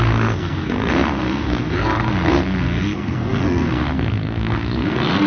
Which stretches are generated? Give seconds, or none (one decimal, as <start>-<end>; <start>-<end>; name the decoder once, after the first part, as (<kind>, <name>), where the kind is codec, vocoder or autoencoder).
0.0-5.3 (codec, SNAC)